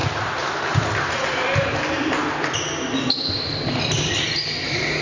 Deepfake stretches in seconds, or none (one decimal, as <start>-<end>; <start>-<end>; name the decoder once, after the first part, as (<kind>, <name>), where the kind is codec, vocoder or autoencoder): none